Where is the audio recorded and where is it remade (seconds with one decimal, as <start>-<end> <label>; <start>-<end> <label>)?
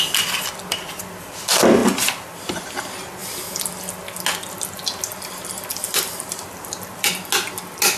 0.0-1.8 recorded; 1.8-2.8 remade; 2.8-3.2 recorded; 3.2-3.7 remade; 3.7-5.7 recorded; 5.7-6.4 remade; 6.4-8.0 recorded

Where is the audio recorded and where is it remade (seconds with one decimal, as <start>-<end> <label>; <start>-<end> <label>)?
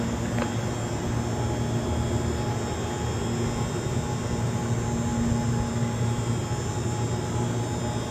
0.0-8.1 recorded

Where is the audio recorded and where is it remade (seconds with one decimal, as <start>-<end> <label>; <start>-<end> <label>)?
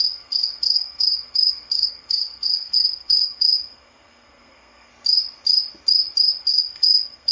0.0-4.9 remade; 4.9-6.4 recorded; 6.4-7.3 remade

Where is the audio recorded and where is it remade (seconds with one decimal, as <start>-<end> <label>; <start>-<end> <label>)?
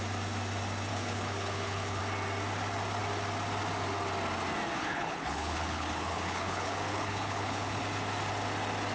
0.0-0.9 recorded; 0.9-2.0 remade; 2.0-4.8 recorded; 4.8-7.8 remade; 7.8-8.9 recorded